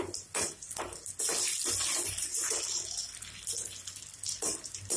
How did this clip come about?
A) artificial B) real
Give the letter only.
B